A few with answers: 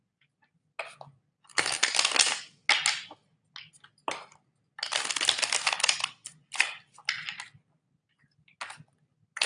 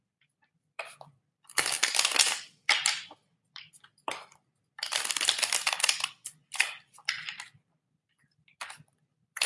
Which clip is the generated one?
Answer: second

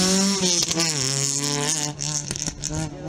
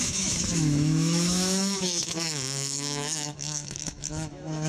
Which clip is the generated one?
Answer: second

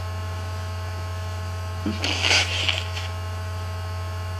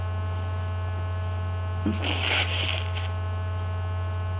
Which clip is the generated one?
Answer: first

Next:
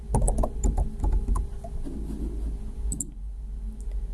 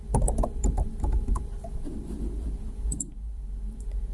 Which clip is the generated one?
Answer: second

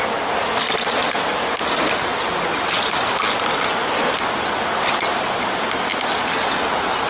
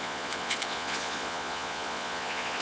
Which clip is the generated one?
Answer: second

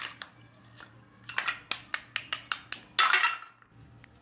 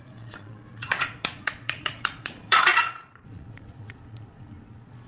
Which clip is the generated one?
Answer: second